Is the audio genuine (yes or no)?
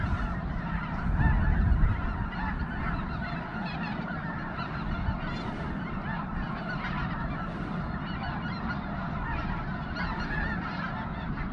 yes